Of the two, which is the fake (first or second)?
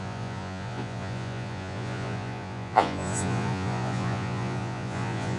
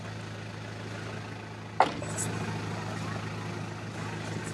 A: first